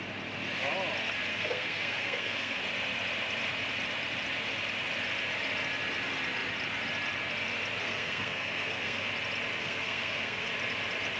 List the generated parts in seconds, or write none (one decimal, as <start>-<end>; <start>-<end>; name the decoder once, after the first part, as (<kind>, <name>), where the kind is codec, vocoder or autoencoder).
1.3-2.6 (codec, SNAC); 7.8-9.1; 9.6-10.5